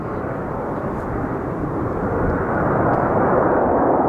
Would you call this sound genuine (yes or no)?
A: yes